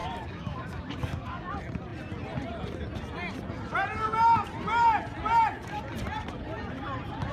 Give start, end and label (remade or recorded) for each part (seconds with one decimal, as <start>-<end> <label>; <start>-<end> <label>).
0.0-1.5 remade; 1.5-7.3 recorded